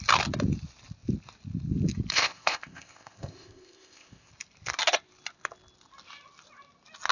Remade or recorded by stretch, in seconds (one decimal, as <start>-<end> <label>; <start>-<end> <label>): 0.0-2.1 recorded; 2.1-4.3 remade; 4.3-7.1 recorded